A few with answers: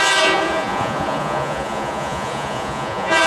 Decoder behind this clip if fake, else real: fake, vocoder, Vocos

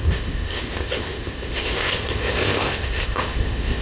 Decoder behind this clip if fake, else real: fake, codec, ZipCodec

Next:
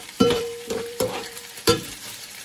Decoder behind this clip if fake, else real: fake, vocoder, BigVGAN v2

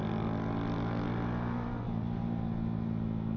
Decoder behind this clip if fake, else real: real